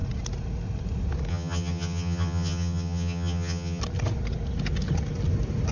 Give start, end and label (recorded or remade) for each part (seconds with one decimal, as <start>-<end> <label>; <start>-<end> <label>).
0.0-1.3 recorded; 1.3-3.8 remade; 3.8-5.7 recorded